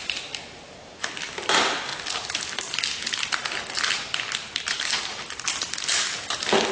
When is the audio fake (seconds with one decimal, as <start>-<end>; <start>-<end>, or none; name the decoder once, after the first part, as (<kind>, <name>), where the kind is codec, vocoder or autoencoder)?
none